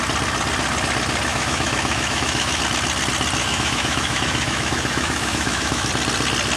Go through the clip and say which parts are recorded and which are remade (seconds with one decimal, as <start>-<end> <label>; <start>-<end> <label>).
0.0-1.3 recorded; 1.3-2.6 remade; 2.6-3.4 recorded; 3.4-5.9 remade; 5.9-6.6 recorded